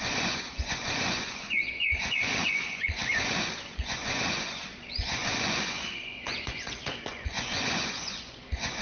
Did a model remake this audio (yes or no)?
yes